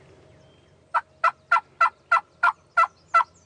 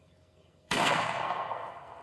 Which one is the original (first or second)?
first